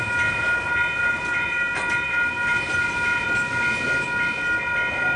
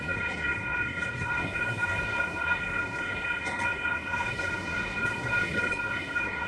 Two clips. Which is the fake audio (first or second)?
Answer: second